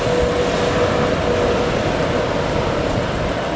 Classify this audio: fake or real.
real